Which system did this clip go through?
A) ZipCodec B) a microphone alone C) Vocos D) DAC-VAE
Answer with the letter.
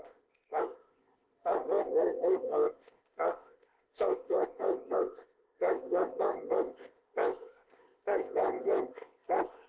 A